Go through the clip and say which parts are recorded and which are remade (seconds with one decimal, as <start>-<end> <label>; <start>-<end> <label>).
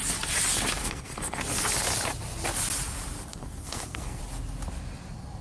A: 0.0-0.8 recorded; 0.8-1.4 remade; 1.4-3.3 recorded; 3.3-4.2 remade; 4.2-5.4 recorded